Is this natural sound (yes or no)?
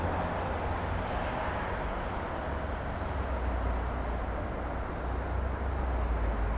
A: yes